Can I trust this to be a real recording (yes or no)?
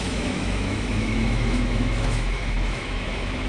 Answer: no